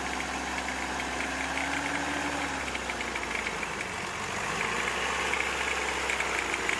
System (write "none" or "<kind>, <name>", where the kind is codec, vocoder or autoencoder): none